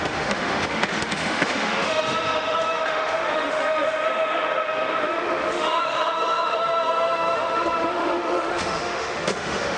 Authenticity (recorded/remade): remade